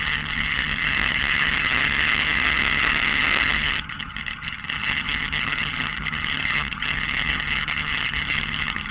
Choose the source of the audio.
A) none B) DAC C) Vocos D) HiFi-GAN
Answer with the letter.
D